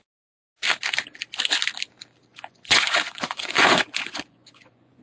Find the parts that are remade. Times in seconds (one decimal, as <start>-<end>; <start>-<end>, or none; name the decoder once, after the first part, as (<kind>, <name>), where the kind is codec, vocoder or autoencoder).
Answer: 2.3-5.0 (vocoder, Vocos)